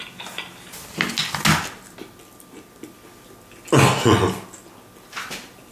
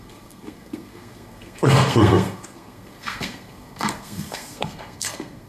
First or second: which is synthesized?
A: second